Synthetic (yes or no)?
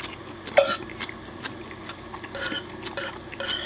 no